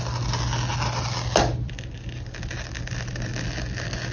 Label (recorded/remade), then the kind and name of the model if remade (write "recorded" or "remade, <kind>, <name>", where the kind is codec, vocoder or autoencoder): recorded